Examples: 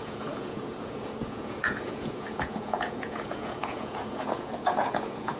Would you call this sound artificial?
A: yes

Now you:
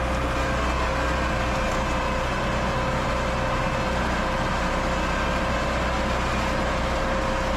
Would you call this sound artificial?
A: no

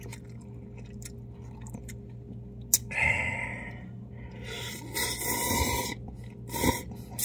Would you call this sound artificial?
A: no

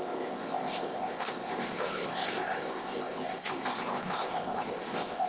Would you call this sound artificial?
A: yes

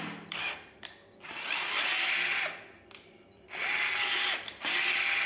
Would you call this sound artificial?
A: no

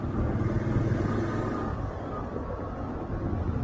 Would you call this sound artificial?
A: no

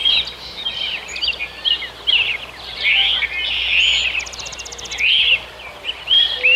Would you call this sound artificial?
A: yes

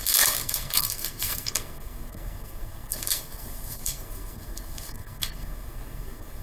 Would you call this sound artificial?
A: yes